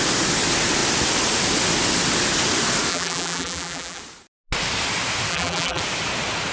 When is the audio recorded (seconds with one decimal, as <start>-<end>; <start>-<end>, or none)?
0.0-2.9; 4.0-5.3; 5.8-6.5